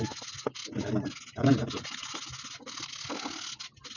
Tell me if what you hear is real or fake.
real